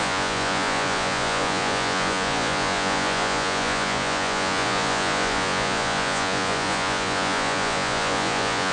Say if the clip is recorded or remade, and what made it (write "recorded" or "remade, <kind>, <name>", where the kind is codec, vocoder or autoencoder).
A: remade, vocoder, Vocos